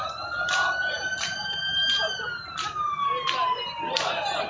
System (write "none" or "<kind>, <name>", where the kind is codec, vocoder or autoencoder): none